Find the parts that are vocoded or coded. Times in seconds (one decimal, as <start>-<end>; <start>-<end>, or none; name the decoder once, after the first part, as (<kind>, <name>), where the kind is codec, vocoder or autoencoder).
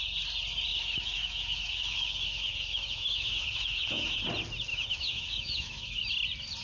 0.7-4.2 (autoencoder, DAC-VAE); 4.7-6.1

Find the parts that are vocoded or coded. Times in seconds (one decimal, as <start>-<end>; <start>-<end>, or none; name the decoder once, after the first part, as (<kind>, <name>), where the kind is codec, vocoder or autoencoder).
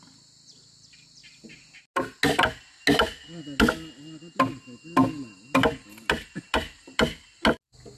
none